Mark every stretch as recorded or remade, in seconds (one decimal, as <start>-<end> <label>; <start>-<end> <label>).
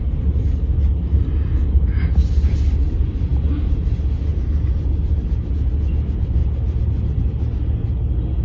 0.0-3.3 recorded; 3.3-3.9 remade; 3.9-4.3 recorded; 4.3-5.1 remade; 5.1-6.4 recorded; 6.4-7.2 remade; 7.2-8.4 recorded